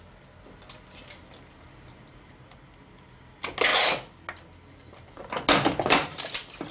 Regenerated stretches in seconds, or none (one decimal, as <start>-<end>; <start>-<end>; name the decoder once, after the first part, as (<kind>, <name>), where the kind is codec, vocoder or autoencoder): none